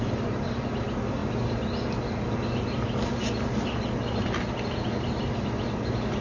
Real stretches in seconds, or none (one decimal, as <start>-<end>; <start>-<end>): 0.0-6.2